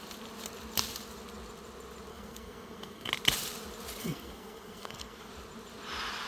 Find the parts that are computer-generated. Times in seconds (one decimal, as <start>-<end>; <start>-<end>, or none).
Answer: 2.1-3.1; 4.0-5.3